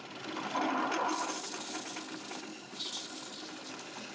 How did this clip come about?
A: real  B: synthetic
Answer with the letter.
A